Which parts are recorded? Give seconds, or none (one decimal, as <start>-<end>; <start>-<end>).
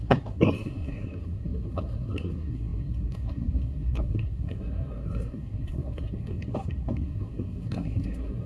none